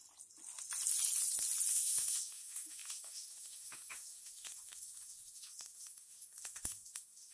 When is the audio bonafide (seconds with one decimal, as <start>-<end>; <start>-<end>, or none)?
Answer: 0.0-1.7